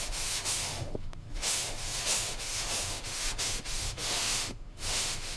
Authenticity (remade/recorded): remade